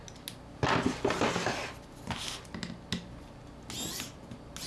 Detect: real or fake real